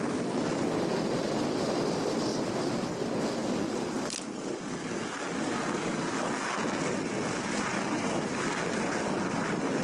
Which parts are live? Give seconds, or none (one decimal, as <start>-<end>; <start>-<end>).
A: 0.0-2.3; 3.2-7.7; 8.4-9.8